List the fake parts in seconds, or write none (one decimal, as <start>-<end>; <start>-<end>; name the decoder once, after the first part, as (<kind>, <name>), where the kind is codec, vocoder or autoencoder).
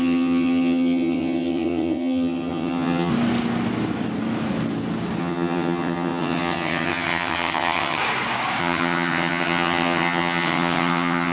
0.0-3.1 (vocoder, HiFi-GAN); 5.2-8.0; 8.6-11.3